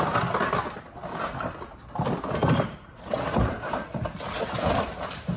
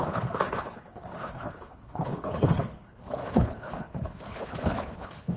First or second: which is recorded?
first